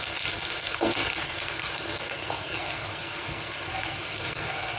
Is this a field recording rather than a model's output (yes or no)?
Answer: no